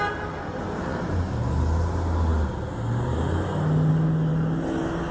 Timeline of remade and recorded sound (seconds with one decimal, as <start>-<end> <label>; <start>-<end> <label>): 0.0-0.4 recorded; 0.4-1.3 remade; 1.3-5.1 recorded